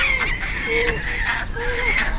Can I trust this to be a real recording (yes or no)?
yes